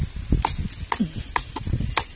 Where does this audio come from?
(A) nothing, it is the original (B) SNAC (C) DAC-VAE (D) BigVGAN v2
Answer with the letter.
A